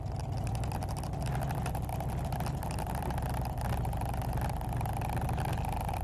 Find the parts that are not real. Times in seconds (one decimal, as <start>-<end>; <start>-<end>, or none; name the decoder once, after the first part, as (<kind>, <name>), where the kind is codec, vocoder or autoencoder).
none